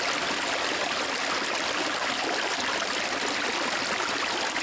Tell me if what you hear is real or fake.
real